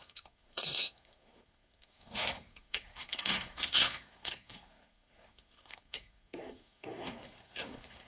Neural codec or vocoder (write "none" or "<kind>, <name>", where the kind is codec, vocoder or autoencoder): codec, SNAC